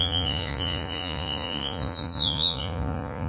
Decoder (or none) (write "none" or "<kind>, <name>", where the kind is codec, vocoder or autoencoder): vocoder, Vocos